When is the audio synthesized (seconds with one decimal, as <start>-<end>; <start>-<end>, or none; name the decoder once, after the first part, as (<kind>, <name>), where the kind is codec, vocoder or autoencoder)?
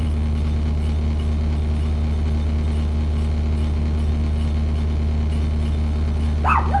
none